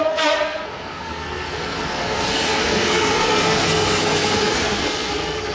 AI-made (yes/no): yes